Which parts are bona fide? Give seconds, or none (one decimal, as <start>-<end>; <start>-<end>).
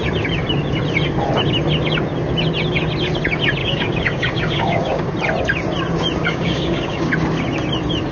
0.0-3.6; 5.1-6.2; 7.1-8.1